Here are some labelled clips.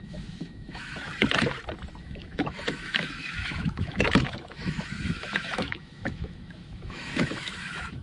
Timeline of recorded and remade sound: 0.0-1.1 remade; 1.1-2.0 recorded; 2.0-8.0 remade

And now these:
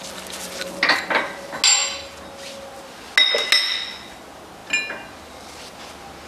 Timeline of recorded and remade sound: 0.0-6.3 recorded